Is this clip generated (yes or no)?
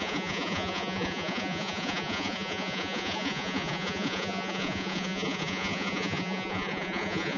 yes